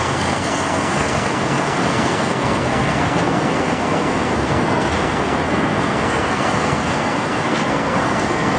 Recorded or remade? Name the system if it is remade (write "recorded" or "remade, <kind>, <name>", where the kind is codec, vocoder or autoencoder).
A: remade, codec, SNAC